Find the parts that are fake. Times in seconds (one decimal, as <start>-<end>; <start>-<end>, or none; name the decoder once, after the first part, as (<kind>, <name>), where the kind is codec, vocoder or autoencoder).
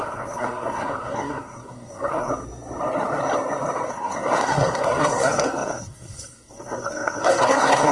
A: 0.0-2.3 (codec, SNAC); 3.9-7.9